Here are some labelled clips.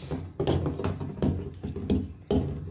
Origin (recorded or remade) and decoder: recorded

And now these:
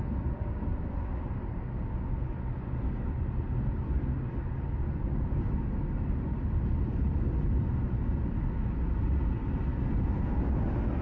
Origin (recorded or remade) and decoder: recorded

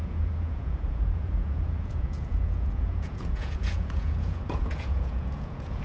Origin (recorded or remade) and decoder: remade, vocoder, Vocos